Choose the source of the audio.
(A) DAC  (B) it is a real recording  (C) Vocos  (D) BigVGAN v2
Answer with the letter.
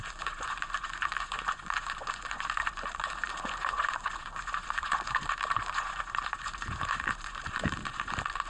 C